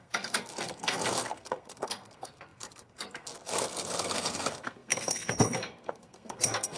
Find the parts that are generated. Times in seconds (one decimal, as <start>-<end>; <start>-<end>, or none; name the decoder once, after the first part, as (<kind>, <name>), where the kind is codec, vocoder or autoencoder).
0.0-6.8 (codec, SNAC)